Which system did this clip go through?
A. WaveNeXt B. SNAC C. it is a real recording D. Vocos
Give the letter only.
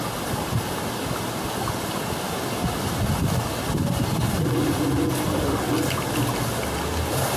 C